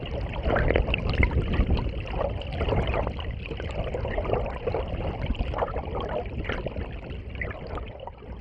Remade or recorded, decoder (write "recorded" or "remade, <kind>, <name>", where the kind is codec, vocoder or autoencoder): recorded